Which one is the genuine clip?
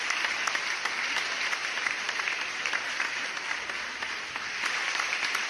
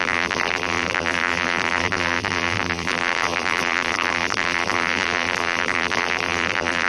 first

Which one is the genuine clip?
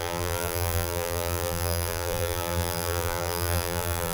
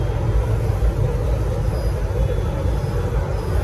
second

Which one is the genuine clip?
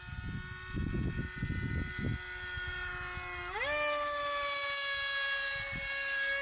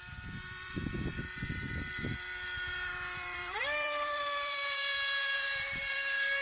first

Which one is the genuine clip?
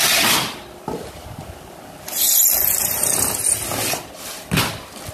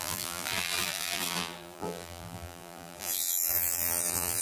first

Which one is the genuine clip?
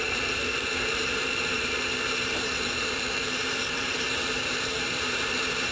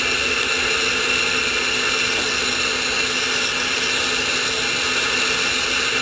second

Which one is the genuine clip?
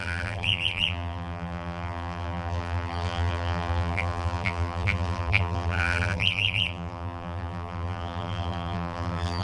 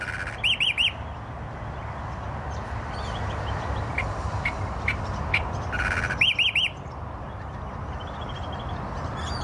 second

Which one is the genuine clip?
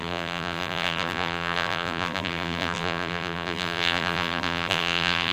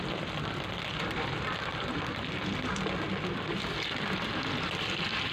second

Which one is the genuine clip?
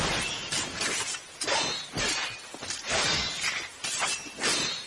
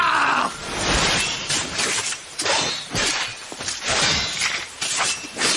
first